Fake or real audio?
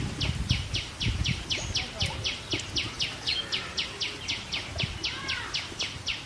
real